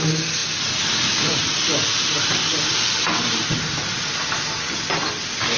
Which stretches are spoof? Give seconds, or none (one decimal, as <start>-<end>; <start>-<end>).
none